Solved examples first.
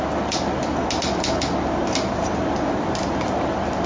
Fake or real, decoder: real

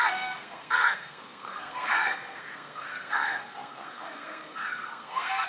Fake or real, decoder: fake, codec, SNAC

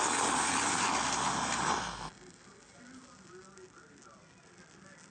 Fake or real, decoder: real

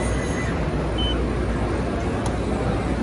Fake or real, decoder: real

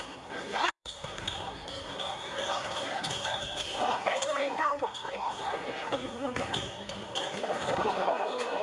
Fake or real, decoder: fake, codec, SNAC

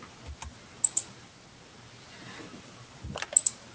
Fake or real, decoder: real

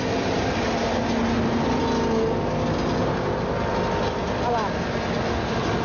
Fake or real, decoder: real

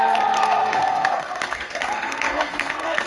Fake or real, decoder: fake, codec, SNAC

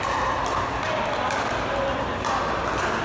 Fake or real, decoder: real